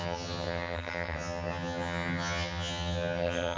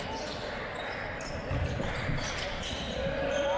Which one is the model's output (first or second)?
first